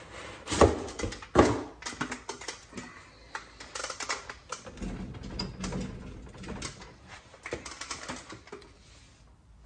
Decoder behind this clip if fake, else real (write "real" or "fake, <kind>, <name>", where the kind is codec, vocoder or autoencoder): real